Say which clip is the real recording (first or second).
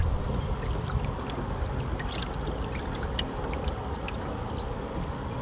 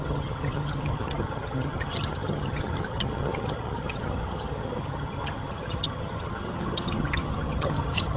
first